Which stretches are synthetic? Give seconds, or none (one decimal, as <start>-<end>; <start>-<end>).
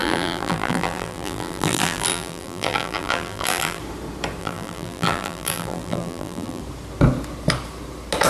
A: 0.0-3.8; 4.4-6.6